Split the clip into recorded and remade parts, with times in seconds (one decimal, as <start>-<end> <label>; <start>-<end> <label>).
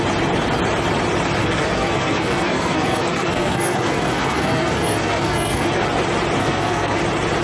0.0-1.4 recorded; 1.4-5.8 remade; 5.8-6.4 recorded; 6.4-7.0 remade; 7.0-7.4 recorded